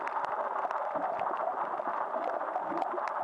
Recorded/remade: recorded